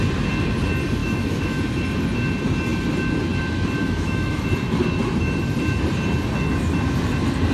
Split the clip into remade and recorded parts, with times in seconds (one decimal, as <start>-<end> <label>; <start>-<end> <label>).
0.0-1.0 recorded; 1.0-1.6 remade; 1.6-3.8 recorded; 3.8-4.4 remade; 4.4-7.5 recorded